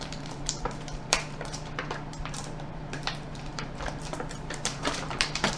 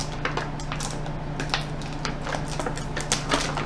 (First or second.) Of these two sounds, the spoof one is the first